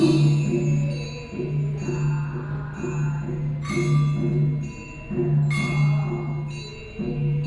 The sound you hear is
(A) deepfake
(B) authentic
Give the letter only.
B